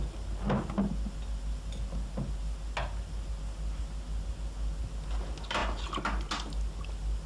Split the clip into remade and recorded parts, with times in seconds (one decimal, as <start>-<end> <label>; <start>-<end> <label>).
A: 0.0-7.3 recorded